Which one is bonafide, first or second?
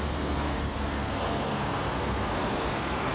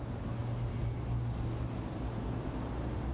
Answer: second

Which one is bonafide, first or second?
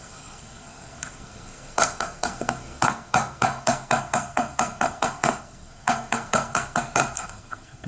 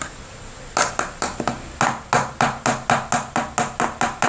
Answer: second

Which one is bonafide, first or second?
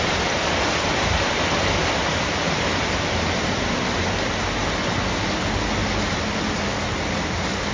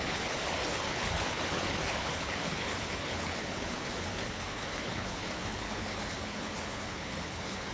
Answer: first